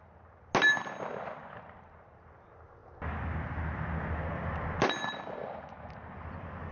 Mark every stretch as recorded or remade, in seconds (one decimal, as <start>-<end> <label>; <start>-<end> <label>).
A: 0.0-6.7 recorded